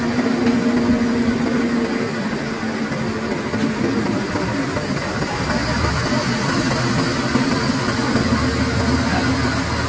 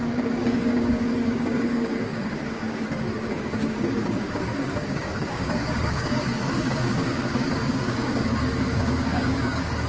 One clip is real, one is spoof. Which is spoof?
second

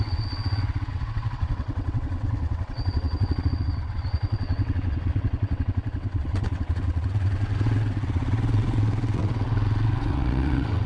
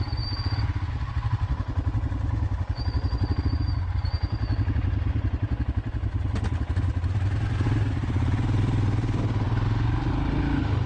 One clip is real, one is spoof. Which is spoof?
first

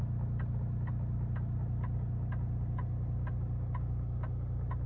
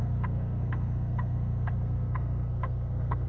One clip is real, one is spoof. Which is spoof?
second